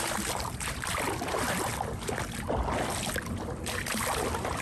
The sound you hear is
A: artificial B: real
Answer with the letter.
B